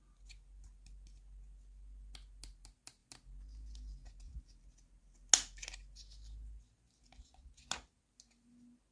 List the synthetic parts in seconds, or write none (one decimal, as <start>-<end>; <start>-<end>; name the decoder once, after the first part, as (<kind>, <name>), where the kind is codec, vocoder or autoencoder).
none